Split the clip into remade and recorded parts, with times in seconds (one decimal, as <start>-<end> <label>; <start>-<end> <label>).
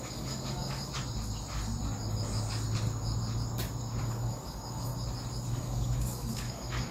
0.0-0.9 remade; 0.9-4.0 recorded; 4.0-4.9 remade; 4.9-5.5 recorded; 5.5-6.9 remade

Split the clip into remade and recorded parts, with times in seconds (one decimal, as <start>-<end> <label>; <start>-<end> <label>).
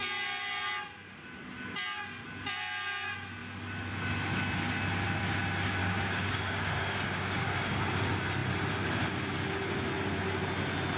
0.0-5.8 recorded; 5.8-7.8 remade; 7.8-11.0 recorded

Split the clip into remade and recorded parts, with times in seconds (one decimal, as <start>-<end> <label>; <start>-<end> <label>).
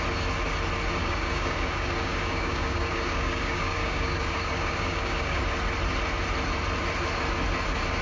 0.0-1.0 recorded; 1.0-5.4 remade; 5.4-8.0 recorded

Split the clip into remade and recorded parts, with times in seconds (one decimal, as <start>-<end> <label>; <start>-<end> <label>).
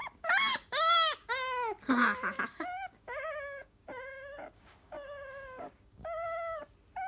0.0-1.3 remade; 1.3-2.3 recorded; 2.3-6.6 remade; 6.6-7.1 recorded